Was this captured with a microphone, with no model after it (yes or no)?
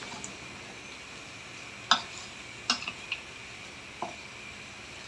yes